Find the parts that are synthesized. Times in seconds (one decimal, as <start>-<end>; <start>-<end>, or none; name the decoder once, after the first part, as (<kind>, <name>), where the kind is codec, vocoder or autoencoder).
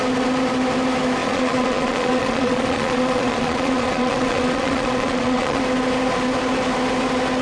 1.2-5.6 (vocoder, Vocos)